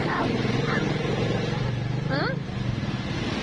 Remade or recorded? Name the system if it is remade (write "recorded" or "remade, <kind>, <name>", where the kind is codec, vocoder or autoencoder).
recorded